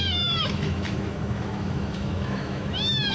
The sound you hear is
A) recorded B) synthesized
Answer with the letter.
B